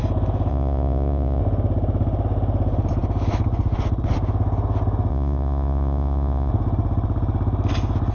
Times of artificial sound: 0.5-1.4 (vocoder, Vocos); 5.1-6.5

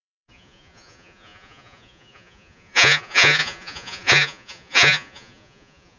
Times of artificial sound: 0.0-6.0 (vocoder, Vocos)

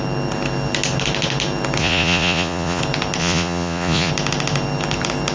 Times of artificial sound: 1.8-2.8 (vocoder, Vocos); 3.2-4.1

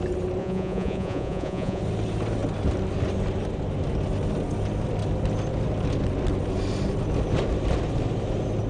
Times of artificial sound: 0.4-1.8 (vocoder, Vocos)

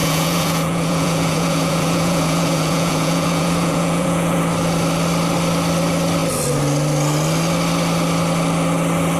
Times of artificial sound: 0.0-4.4 (vocoder, Vocos)

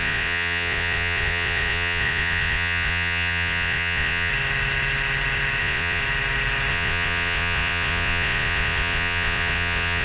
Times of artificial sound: 0.0-4.3 (vocoder, Vocos); 5.6-6.0; 6.7-10.0

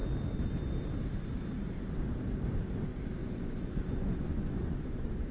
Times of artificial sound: 3.2-5.3 (vocoder, Vocos)